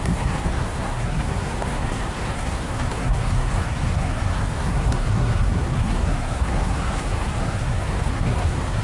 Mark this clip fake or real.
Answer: fake